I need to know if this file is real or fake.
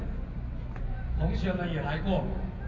real